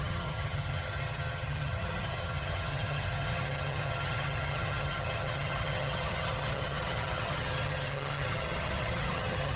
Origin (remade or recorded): remade